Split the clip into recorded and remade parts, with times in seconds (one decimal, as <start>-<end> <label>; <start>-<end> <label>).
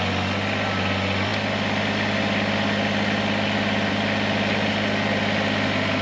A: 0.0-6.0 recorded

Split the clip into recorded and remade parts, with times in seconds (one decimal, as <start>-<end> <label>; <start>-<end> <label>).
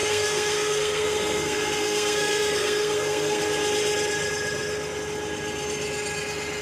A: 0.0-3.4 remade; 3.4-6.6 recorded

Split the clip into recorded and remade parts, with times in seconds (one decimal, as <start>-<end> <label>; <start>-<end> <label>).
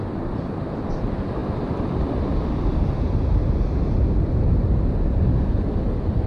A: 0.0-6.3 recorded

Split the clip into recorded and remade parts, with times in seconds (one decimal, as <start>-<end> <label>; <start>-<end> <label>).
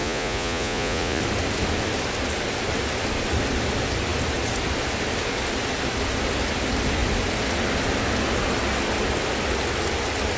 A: 0.0-1.2 remade; 1.2-10.4 recorded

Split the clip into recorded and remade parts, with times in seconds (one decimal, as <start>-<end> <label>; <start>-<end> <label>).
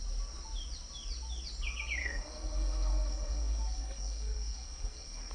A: 0.0-2.0 recorded; 2.0-5.3 remade